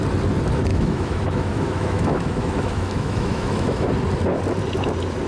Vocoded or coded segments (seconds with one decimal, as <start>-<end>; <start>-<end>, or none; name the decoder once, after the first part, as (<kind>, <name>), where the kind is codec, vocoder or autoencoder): 0.7-3.9 (autoencoder, DAC-VAE)